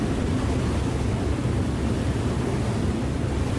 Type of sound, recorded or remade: recorded